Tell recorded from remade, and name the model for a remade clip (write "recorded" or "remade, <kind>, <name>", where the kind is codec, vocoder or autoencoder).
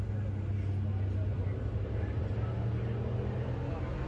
recorded